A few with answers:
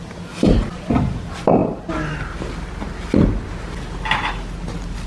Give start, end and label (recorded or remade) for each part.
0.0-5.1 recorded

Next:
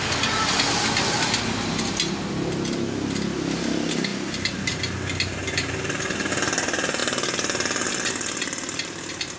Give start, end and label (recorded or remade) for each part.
0.0-9.4 recorded

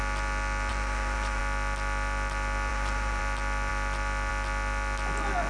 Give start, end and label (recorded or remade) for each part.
0.0-0.7 recorded; 0.7-1.4 remade; 1.4-2.7 recorded; 2.7-3.2 remade; 3.2-5.5 recorded

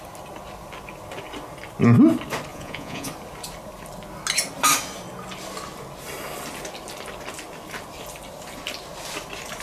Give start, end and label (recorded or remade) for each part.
0.0-2.5 recorded; 2.5-3.1 remade; 3.1-9.6 recorded

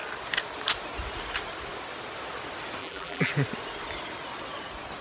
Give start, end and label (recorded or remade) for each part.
0.0-2.8 recorded; 2.8-3.3 remade; 3.3-5.0 recorded

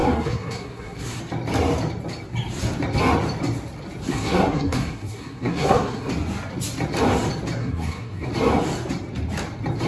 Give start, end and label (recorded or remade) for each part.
0.0-1.2 remade; 1.2-4.1 recorded; 4.1-6.1 remade; 6.1-7.6 recorded; 7.6-8.3 remade; 8.3-9.9 recorded

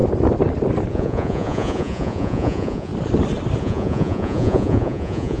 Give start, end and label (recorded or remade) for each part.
0.0-0.9 recorded; 0.9-2.9 remade; 2.9-3.6 recorded; 3.6-5.4 remade

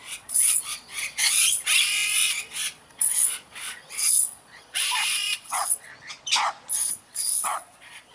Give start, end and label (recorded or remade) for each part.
0.0-5.9 remade; 5.9-6.9 recorded; 6.9-8.1 remade